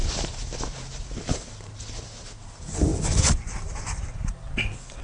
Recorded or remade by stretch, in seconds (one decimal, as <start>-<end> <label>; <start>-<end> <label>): 0.0-5.0 recorded